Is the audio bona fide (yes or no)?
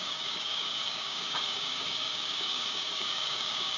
no